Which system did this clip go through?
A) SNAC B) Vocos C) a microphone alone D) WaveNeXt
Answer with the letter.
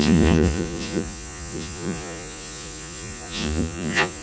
B